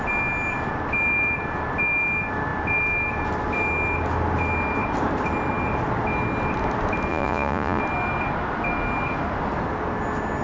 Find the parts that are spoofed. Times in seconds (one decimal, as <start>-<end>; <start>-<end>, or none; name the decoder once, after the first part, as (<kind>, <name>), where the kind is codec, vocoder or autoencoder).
7.1-7.8 (vocoder, Vocos)